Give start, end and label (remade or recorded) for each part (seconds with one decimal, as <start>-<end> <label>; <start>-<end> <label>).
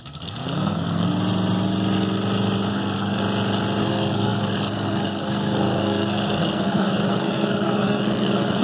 0.0-1.1 remade; 1.1-2.7 recorded; 2.7-3.2 remade; 3.2-3.8 recorded; 3.8-8.6 remade